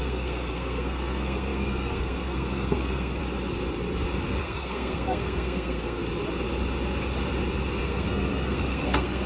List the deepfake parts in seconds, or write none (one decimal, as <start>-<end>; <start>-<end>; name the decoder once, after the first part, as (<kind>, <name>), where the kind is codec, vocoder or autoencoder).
0.0-3.2 (codec, SNAC); 4.4-6.0; 7.8-9.3